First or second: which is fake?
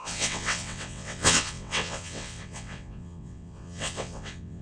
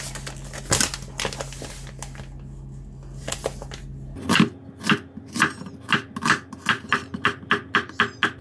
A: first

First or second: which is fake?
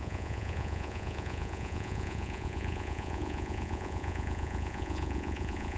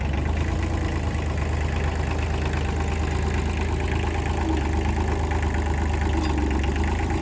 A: first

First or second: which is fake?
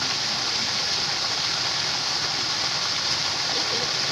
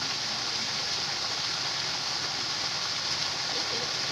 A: first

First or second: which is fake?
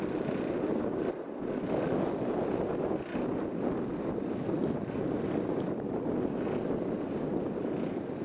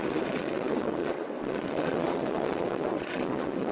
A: second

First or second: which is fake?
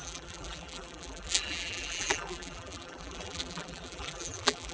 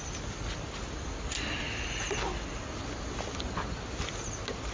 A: first